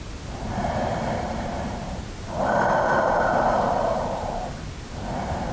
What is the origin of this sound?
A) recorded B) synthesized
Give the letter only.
B